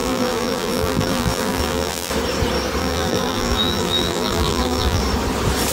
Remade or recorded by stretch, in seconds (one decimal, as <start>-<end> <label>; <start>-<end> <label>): 0.0-2.1 remade; 2.1-2.8 recorded; 2.8-5.0 remade; 5.0-5.7 recorded